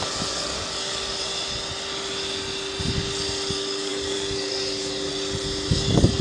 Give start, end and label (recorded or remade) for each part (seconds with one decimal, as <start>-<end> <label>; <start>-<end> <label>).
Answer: 0.0-1.3 remade; 1.3-3.5 recorded; 3.5-5.1 remade; 5.1-5.7 recorded; 5.7-6.2 remade